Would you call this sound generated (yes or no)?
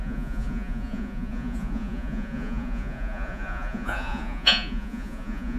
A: yes